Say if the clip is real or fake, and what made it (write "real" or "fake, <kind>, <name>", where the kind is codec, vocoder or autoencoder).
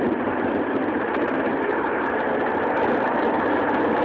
real